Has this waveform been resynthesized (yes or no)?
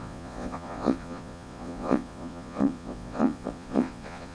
yes